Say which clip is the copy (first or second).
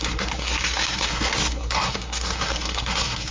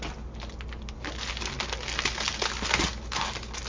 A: first